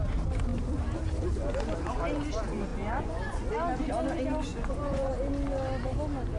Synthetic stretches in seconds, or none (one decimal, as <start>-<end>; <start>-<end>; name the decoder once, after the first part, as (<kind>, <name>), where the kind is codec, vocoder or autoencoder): 2.7-3.5 (vocoder, Vocos); 4.5-5.1